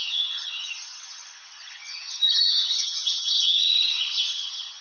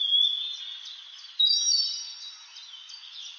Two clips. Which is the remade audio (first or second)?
first